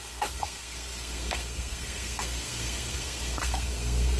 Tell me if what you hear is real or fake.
fake